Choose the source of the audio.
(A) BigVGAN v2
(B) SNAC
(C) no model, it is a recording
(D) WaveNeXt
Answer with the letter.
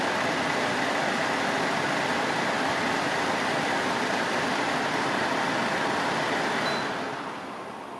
C